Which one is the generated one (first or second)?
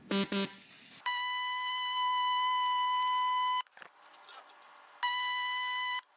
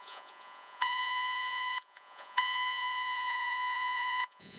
second